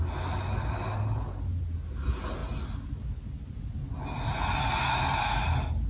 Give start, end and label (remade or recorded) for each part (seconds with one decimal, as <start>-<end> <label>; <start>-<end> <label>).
0.0-5.9 recorded

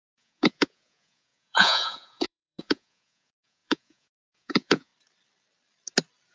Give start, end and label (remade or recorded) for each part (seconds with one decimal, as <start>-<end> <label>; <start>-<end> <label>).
0.0-4.9 remade; 4.9-6.3 recorded